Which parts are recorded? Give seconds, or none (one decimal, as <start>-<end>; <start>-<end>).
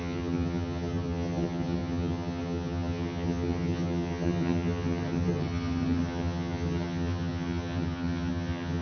none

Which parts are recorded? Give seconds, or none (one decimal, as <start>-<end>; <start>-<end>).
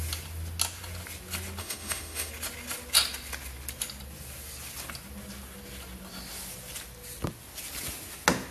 0.0-1.6; 2.3-8.5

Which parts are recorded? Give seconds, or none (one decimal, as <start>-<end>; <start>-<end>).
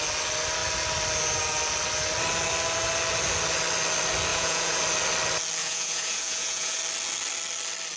0.0-4.3; 4.8-5.6; 6.8-8.0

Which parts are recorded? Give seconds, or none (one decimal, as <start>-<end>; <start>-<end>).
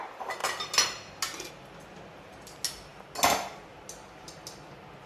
0.0-5.1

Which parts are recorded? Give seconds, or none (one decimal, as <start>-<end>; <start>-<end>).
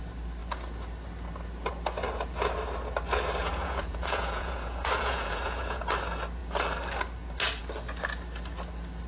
0.0-3.4; 5.8-9.1